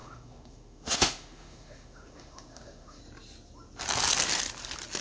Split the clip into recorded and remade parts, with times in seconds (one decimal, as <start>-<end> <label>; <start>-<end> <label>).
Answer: 0.0-3.0 remade; 3.0-5.0 recorded